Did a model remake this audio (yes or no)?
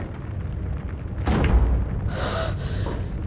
no